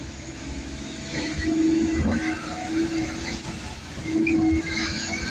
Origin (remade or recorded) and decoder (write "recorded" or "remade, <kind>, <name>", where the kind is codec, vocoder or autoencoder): remade, autoencoder, DAC-VAE